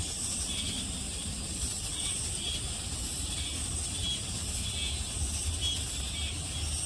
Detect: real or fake real